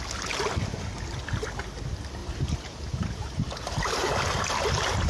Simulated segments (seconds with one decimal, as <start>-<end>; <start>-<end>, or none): 2.2-4.1